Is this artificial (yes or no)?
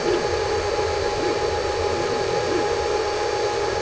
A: no